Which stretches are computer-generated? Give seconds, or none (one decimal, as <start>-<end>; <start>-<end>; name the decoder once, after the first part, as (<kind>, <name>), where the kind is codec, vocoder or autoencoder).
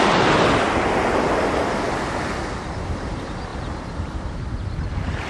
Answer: none